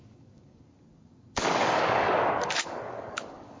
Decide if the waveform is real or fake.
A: fake